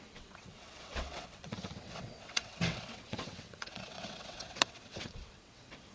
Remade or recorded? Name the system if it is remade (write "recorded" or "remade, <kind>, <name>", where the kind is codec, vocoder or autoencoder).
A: remade, vocoder, WaveNeXt